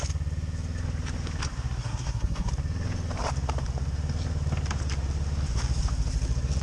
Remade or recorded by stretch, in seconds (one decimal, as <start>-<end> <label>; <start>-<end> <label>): 0.0-1.8 recorded; 1.8-2.5 remade; 2.5-6.6 recorded